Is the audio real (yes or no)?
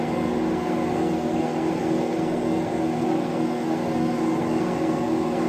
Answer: no